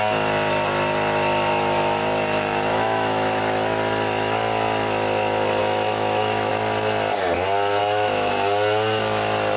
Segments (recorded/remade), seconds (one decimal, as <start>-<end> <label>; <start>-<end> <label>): 0.0-2.7 recorded; 2.7-3.4 remade; 3.4-5.6 recorded; 5.6-6.5 remade; 6.5-7.8 recorded; 7.8-8.3 remade; 8.3-9.6 recorded